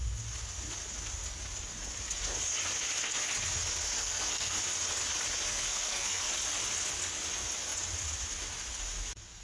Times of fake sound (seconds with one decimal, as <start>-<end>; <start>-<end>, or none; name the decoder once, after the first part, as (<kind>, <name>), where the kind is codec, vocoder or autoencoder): 4.0-4.6 (codec, SNAC); 5.5-6.3